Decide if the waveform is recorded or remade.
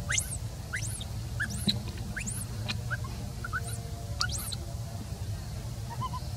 recorded